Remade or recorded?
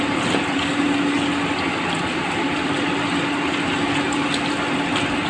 recorded